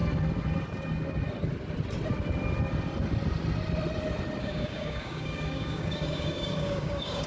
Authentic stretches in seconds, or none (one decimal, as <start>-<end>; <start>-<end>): 0.0-4.4